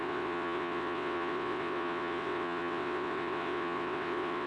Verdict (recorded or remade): remade